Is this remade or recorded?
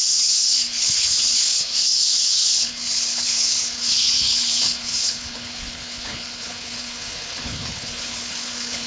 remade